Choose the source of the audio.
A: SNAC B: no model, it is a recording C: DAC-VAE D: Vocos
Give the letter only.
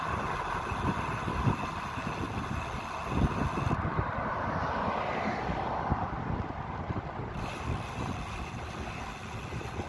B